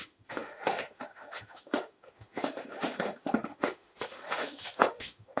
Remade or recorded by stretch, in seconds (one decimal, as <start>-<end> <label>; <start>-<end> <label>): 0.0-5.4 remade